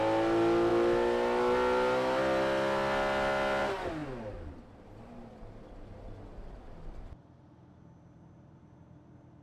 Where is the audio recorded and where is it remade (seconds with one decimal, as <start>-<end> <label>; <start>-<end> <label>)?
0.0-9.4 recorded